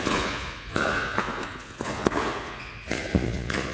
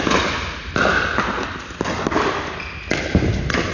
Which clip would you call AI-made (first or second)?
first